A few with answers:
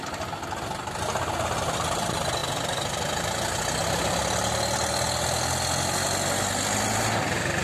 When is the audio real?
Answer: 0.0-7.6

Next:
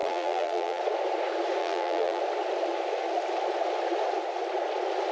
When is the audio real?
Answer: 0.8-1.6; 2.2-5.1

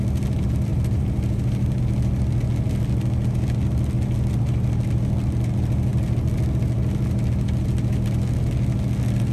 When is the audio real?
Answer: 0.0-0.7; 1.8-9.3

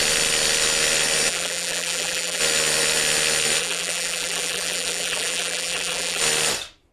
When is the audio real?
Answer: 0.0-1.3; 2.4-3.6; 6.2-6.9

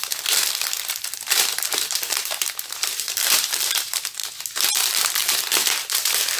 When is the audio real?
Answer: 4.2-4.9

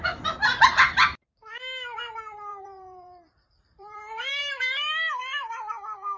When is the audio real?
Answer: 0.0-2.5; 4.6-6.2

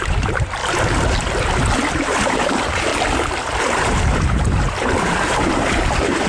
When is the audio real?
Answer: 0.6-1.9; 2.9-3.6

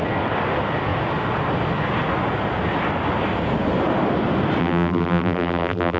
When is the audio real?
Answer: 0.0-4.6